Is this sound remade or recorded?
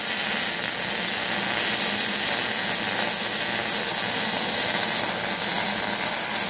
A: recorded